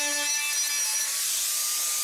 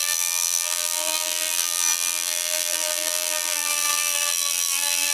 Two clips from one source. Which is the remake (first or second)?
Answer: second